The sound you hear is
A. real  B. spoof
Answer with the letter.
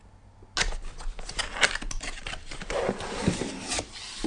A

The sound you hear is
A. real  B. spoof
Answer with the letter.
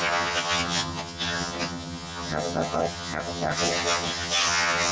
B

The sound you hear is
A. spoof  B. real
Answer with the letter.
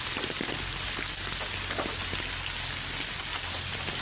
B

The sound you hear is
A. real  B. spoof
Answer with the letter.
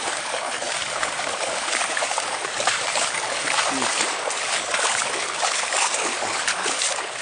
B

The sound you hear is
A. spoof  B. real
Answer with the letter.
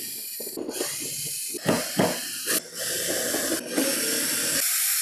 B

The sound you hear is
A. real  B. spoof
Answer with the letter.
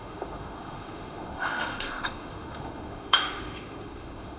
B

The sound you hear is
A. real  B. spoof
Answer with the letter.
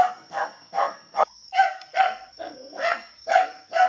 B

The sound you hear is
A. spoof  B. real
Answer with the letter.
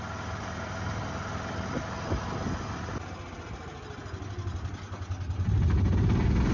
B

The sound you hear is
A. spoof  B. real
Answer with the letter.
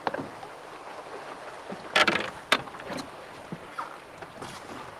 B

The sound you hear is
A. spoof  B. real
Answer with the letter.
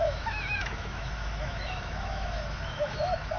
A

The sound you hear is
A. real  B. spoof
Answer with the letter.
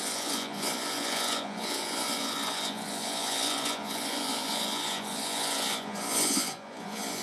B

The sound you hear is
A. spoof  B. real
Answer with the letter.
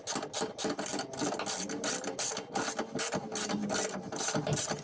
B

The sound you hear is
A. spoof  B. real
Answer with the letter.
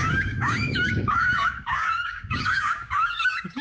A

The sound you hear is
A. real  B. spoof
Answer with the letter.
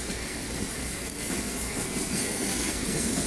B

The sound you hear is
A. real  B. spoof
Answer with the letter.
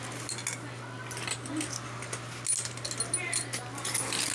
A